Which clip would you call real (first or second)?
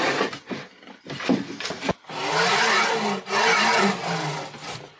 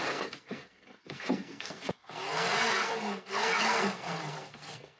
first